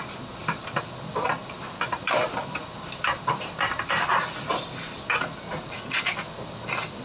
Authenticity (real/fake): real